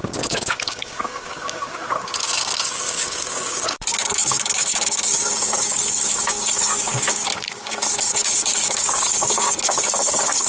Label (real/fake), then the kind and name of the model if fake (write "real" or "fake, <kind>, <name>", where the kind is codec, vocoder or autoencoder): fake, codec, DAC